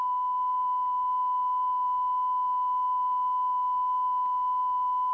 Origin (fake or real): real